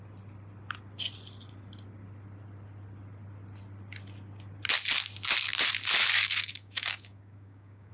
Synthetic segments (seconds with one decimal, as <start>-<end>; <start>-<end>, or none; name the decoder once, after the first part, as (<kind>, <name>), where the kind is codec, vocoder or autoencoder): 6.0-7.9 (codec, DAC)